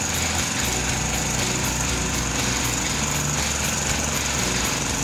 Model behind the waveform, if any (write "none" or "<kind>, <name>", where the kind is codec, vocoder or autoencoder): none